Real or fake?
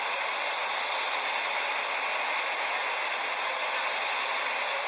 real